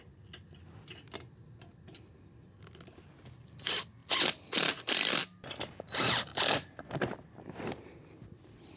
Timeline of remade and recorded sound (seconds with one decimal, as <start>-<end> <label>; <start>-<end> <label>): 0.0-8.8 recorded